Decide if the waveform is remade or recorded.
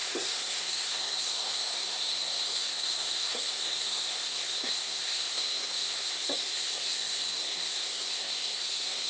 remade